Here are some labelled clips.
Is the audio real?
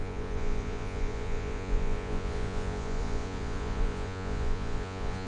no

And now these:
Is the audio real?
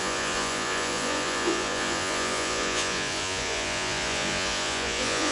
no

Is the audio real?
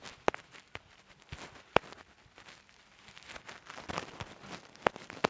yes